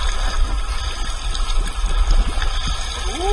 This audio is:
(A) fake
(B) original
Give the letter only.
B